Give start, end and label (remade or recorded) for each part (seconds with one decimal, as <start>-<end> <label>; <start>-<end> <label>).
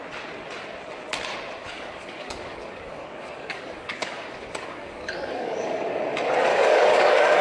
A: 0.0-1.6 recorded; 1.6-6.0 remade; 6.0-6.5 recorded; 6.5-7.4 remade